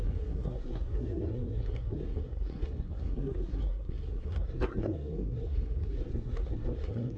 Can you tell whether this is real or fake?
fake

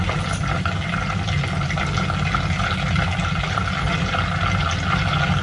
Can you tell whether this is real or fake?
real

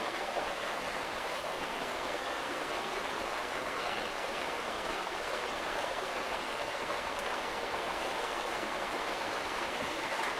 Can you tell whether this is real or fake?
fake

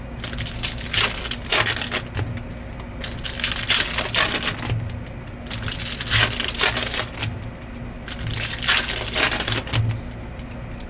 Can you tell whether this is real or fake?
real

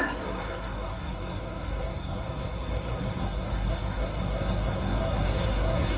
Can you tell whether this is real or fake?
fake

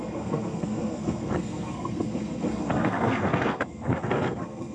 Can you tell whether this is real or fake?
fake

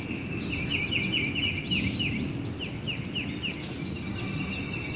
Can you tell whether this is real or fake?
real